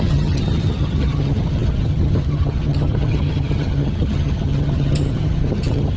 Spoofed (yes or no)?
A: yes